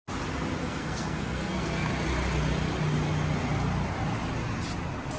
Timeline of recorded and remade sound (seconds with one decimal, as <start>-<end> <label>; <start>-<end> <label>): 0.0-0.6 recorded; 0.6-1.9 remade; 1.9-5.2 recorded